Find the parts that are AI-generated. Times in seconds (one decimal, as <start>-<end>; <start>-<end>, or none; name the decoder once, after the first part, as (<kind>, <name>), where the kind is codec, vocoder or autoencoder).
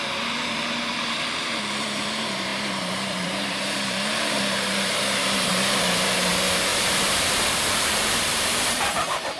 0.0-9.4 (vocoder, BigVGAN v2)